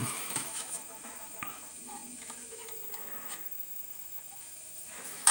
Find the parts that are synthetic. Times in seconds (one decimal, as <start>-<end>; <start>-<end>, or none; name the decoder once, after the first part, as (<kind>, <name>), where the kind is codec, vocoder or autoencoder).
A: 0.0-5.3 (autoencoder, DAC-VAE)